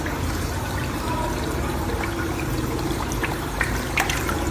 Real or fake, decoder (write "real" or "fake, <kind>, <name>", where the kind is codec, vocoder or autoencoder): fake, vocoder, BigVGAN v2